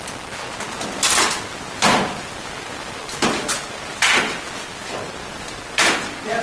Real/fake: real